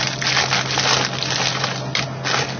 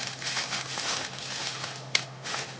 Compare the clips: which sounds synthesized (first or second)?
second